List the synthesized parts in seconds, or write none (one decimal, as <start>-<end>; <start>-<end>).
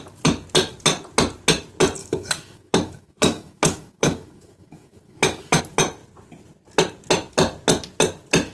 2.0-5.6